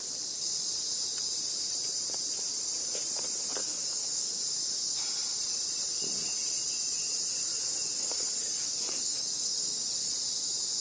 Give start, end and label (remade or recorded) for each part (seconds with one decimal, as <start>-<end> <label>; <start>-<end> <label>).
0.0-3.6 recorded; 3.6-4.4 remade; 4.4-7.9 recorded; 7.9-10.1 remade; 10.1-10.8 recorded